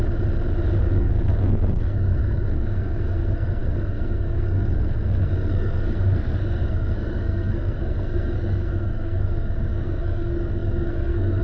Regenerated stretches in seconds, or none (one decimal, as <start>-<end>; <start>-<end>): 0.8-11.4

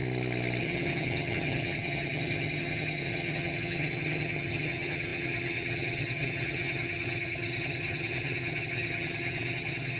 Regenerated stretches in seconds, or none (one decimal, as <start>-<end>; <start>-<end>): 0.6-10.0